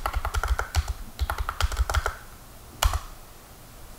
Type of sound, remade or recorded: recorded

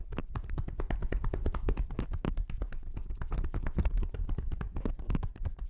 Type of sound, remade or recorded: recorded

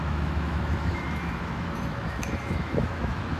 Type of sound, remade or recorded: remade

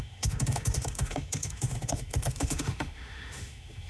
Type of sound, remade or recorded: remade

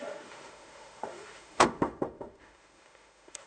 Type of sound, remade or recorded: remade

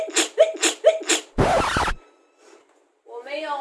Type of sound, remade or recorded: recorded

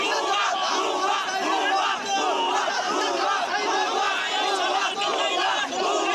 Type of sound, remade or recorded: recorded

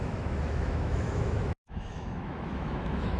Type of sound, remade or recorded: remade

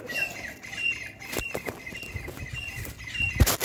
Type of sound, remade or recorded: recorded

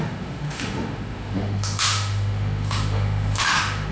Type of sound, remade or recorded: remade